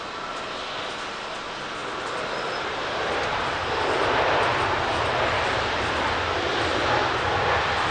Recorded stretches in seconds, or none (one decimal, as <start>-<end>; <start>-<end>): 0.0-7.9